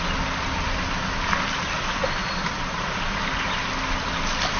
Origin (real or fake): real